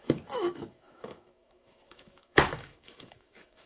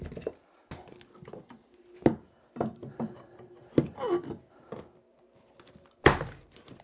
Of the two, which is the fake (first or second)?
first